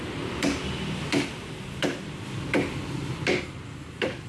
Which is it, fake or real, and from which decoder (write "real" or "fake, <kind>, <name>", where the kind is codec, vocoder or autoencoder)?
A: fake, vocoder, BigVGAN v2